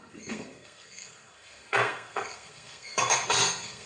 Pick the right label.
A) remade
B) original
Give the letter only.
A